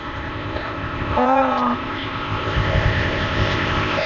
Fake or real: fake